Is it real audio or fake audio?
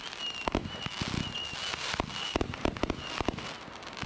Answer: real